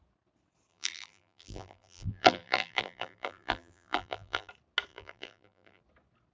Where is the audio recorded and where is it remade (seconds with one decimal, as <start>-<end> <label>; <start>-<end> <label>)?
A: 0.0-0.7 recorded; 0.7-4.5 remade; 4.5-4.9 recorded; 4.9-5.8 remade; 5.8-6.3 recorded